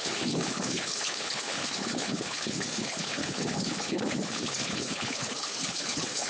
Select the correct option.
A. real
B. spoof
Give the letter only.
B